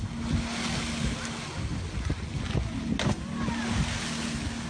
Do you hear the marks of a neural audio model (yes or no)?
no